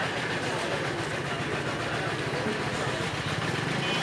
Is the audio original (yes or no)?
yes